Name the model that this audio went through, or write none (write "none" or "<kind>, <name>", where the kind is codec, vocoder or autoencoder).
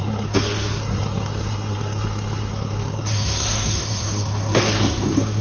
codec, SNAC